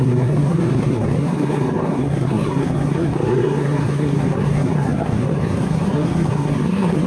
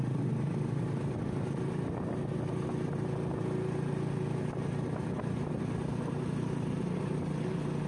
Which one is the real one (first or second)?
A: second